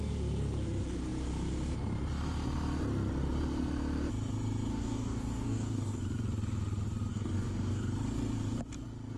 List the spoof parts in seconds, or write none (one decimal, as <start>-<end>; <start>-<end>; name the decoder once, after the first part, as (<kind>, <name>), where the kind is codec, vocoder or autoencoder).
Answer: 4.7-6.0 (codec, DAC); 7.1-7.8